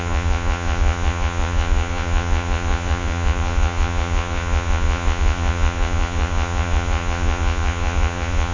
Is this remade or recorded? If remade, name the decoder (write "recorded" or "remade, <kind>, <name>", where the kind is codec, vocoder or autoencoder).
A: remade, vocoder, Vocos